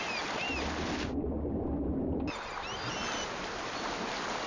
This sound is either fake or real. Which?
real